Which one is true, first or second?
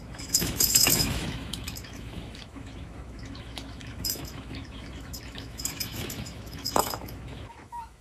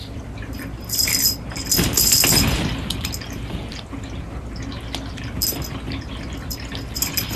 second